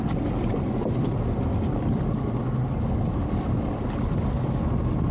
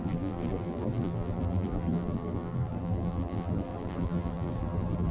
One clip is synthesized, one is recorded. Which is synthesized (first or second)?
second